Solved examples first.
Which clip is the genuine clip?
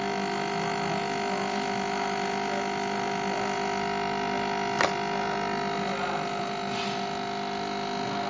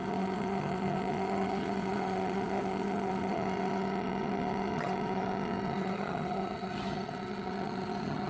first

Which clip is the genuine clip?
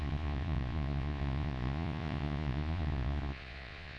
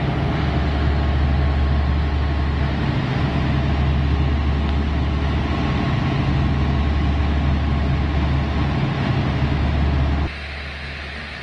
second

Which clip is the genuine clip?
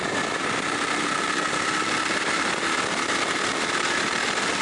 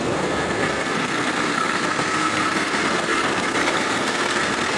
first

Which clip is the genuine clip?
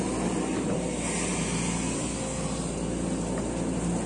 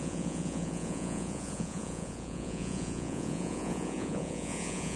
first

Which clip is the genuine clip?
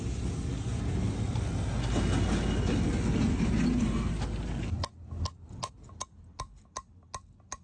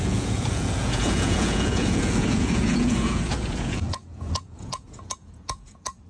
first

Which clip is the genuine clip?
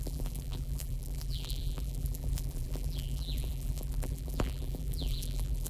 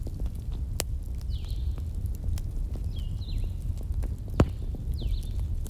second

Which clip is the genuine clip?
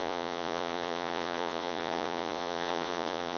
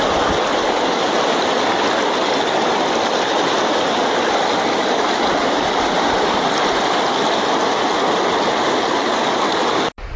second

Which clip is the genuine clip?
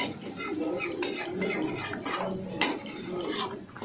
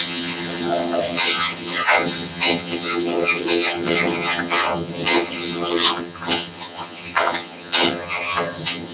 first